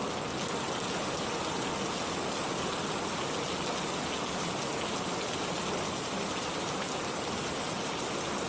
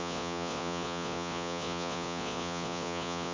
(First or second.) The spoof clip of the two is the second